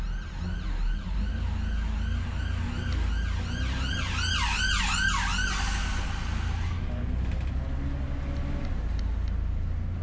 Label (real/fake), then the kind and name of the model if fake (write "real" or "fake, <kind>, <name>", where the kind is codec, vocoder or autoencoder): real